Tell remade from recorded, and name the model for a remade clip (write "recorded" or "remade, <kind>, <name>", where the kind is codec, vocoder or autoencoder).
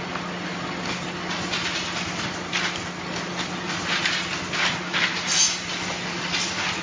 recorded